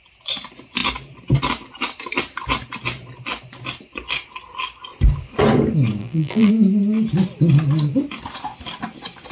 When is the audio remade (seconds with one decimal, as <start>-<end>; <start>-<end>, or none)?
6.0-6.5